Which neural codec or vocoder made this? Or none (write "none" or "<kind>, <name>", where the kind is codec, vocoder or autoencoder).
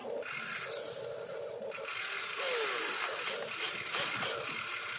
none